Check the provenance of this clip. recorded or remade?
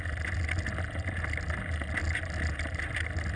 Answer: recorded